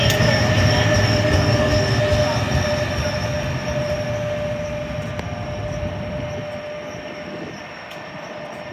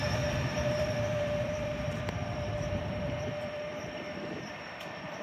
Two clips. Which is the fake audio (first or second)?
second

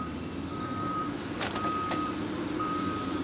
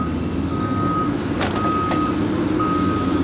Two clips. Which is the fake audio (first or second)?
first